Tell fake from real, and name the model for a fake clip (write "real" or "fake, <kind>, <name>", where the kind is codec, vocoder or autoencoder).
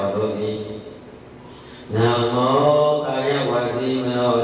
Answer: real